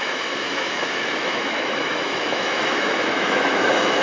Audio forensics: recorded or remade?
remade